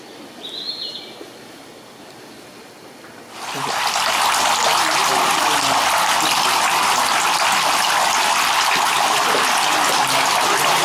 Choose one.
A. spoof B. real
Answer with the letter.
B